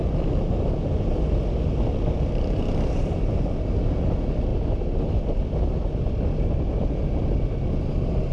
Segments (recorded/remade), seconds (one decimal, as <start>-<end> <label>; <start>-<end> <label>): 0.0-8.3 recorded